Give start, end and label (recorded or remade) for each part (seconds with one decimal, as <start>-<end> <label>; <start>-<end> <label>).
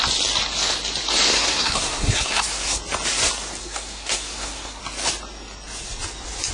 0.0-1.3 recorded; 1.3-2.8 remade; 2.8-3.6 recorded; 3.6-4.8 remade; 4.8-6.5 recorded